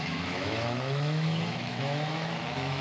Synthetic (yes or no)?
yes